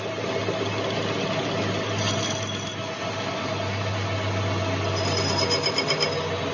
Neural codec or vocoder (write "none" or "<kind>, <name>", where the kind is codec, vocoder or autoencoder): none